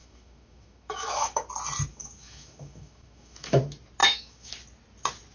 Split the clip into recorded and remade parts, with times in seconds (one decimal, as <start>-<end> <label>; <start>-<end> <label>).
0.0-1.5 remade; 1.5-1.9 recorded; 1.9-3.6 remade; 3.6-4.0 recorded; 4.0-4.5 remade; 4.5-5.3 recorded